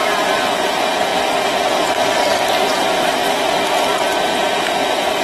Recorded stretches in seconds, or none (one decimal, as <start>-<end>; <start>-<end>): 1.1-4.2

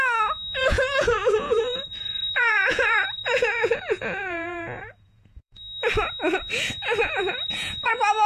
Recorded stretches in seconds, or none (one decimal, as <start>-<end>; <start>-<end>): 0.0-0.6; 5.6-7.0; 7.9-8.3

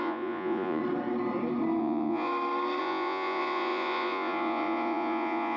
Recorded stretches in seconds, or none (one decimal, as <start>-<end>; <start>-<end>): 0.8-1.8; 2.3-2.8

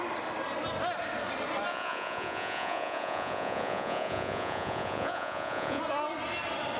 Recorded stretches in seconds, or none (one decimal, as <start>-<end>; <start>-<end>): 0.0-1.7; 5.8-6.8

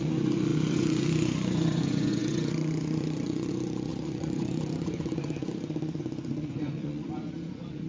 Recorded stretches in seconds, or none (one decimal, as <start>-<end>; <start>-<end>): none